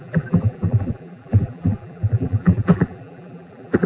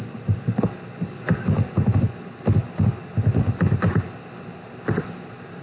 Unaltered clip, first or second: second